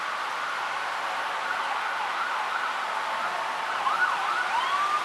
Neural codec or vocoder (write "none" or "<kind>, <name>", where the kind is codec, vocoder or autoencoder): none